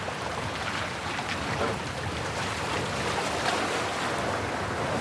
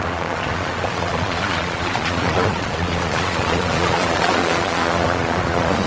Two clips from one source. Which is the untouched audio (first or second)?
first